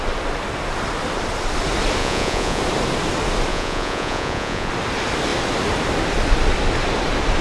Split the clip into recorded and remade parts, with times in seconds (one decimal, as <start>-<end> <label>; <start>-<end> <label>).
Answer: 0.0-2.0 recorded; 2.0-2.6 remade; 2.6-3.5 recorded; 3.5-4.7 remade; 4.7-7.4 recorded